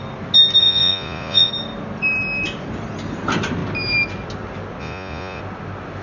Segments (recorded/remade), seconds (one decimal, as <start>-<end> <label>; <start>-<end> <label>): 0.0-0.6 recorded; 0.6-1.5 remade; 1.5-4.8 recorded; 4.8-5.4 remade; 5.4-6.0 recorded